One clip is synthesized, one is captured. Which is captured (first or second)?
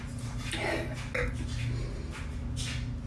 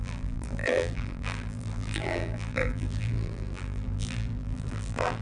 first